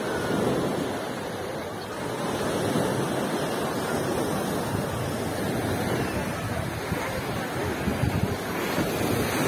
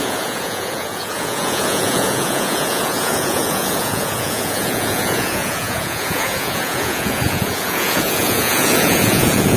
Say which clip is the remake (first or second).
second